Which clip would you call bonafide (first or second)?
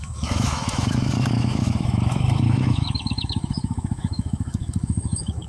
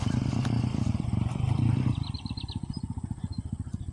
second